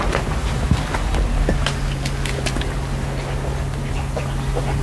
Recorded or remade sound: recorded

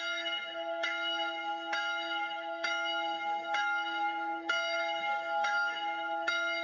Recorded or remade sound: remade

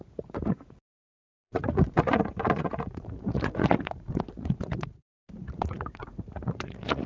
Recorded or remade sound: remade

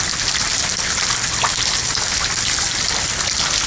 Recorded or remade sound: recorded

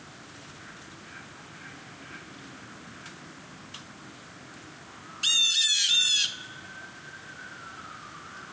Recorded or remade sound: recorded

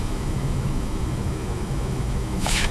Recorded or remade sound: remade